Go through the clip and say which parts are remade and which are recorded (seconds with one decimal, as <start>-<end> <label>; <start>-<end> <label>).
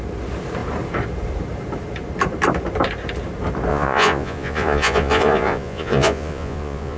0.0-3.7 recorded; 3.7-7.0 remade